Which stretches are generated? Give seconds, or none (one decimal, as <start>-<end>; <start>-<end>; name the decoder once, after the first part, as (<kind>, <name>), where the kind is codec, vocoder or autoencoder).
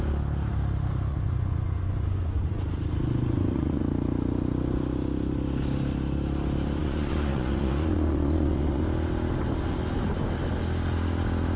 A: 1.1-3.8 (vocoder, Vocos); 6.8-8.8